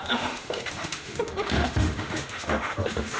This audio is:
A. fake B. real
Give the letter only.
A